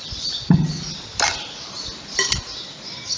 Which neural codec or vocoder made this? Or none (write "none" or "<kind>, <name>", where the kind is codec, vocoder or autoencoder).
none